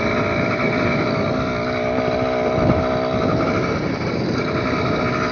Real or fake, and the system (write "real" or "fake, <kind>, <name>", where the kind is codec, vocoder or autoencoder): real